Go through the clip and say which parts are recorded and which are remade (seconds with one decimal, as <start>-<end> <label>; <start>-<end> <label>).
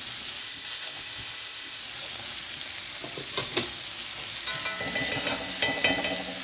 0.0-0.4 recorded; 0.4-1.8 remade; 1.8-6.4 recorded